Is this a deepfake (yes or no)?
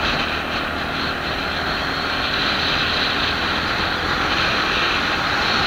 no